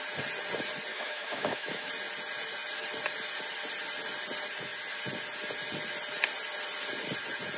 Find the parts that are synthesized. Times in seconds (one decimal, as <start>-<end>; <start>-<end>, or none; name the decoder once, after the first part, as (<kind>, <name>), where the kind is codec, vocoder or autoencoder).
0.9-1.9 (autoencoder, DAC-VAE)